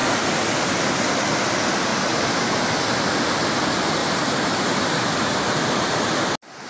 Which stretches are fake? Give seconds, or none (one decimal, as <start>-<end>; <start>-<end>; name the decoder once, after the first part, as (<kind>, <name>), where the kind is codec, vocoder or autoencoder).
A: 0.0-0.8 (vocoder, BigVGAN v2); 1.9-2.6; 4.0-5.4